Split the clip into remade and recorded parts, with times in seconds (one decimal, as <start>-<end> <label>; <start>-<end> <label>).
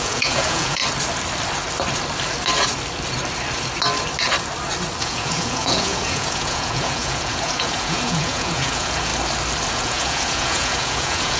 0.0-0.8 remade; 0.8-5.0 recorded; 5.0-9.1 remade; 9.1-9.7 recorded; 9.7-11.4 remade